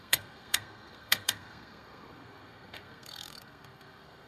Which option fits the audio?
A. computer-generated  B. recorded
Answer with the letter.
A